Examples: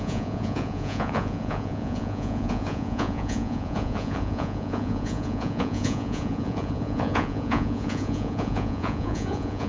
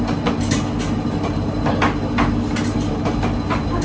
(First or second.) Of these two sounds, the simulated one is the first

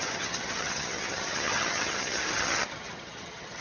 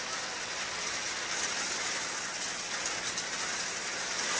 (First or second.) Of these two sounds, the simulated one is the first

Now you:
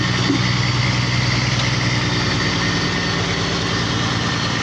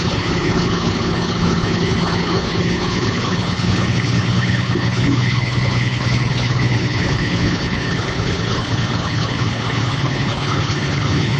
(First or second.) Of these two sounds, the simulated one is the second